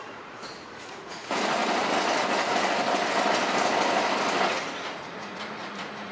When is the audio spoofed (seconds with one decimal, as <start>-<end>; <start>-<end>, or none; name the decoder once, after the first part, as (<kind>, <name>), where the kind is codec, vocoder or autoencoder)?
0.0-1.6 (vocoder, Vocos); 4.5-6.1